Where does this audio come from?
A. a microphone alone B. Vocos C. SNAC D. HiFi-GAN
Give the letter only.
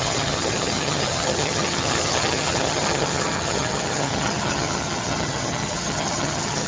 D